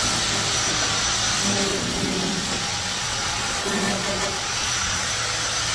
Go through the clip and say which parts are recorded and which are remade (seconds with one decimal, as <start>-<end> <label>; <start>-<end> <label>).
0.0-1.7 recorded; 1.7-5.1 remade; 5.1-5.7 recorded